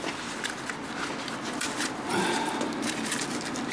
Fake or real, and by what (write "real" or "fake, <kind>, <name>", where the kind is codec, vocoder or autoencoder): real